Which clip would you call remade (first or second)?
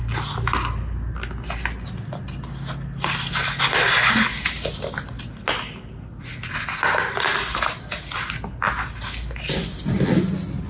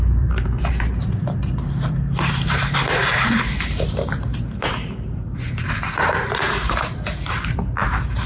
second